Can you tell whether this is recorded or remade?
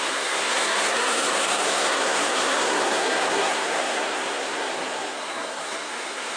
remade